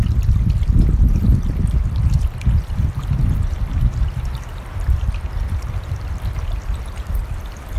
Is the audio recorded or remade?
remade